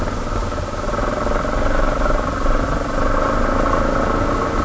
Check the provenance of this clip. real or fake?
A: real